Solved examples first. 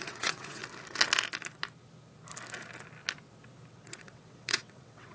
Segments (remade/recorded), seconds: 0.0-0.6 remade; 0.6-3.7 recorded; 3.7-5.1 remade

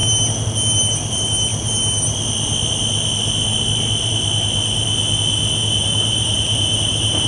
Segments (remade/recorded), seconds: 0.0-1.1 recorded; 1.1-1.5 remade; 1.5-5.8 recorded; 5.8-7.3 remade

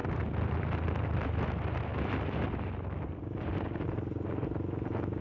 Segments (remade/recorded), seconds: 0.0-5.2 recorded